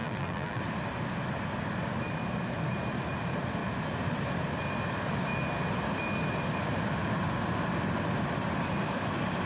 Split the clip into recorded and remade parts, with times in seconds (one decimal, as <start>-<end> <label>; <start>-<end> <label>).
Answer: 0.0-0.6 remade; 0.6-9.5 recorded